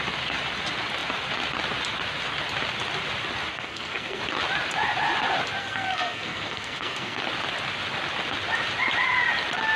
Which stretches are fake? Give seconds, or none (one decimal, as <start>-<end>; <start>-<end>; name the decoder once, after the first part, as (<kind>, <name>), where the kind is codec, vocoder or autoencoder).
3.5-4.2 (codec, SNAC); 5.6-7.2